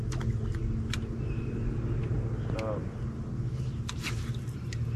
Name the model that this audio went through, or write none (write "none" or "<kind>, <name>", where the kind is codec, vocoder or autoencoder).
none